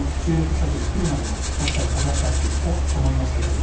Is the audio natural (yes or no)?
yes